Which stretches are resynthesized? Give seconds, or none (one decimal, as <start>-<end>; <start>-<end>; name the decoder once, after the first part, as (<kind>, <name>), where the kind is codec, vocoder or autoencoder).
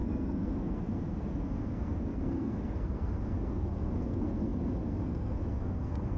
0.0-6.2 (codec, SNAC)